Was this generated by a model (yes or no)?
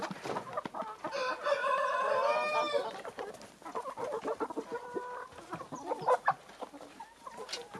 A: no